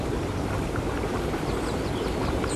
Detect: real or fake real